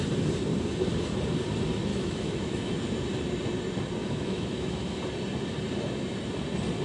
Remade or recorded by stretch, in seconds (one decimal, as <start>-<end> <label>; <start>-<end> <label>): 0.0-1.9 recorded; 1.9-2.7 remade; 2.7-4.0 recorded; 4.0-5.0 remade; 5.0-6.8 recorded